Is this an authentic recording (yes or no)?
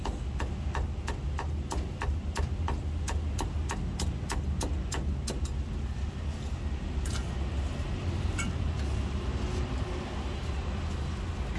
yes